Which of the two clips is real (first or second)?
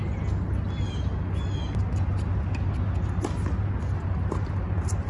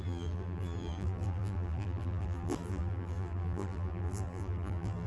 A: first